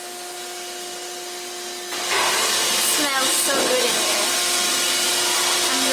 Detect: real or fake real